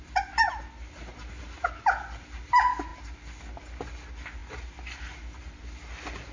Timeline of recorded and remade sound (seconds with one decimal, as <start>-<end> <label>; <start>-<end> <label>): 0.0-4.4 recorded; 4.4-5.0 remade; 5.0-6.3 recorded